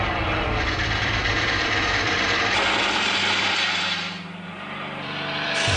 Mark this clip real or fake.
fake